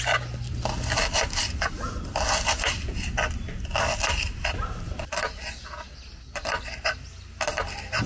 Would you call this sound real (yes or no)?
yes